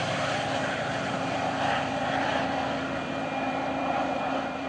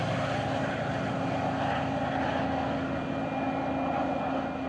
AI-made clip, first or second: first